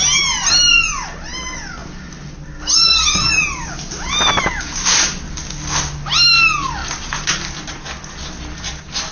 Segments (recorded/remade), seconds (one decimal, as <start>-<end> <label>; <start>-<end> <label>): 0.0-9.1 recorded